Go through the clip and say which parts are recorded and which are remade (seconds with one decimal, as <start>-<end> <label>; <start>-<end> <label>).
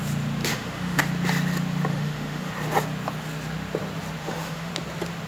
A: 0.0-0.5 recorded; 0.5-1.0 remade; 1.0-1.9 recorded; 1.9-2.5 remade; 2.5-4.2 recorded; 4.2-4.7 remade; 4.7-5.3 recorded